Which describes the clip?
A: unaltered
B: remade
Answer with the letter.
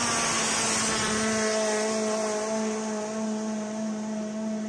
A